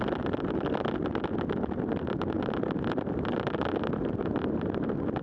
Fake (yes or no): no